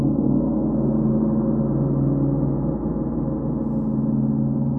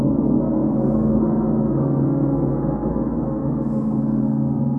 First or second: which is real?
first